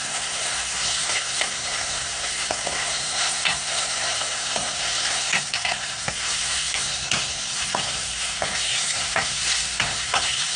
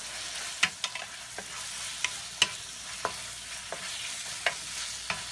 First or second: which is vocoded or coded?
first